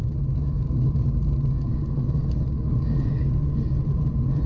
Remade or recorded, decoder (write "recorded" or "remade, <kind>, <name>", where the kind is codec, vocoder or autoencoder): recorded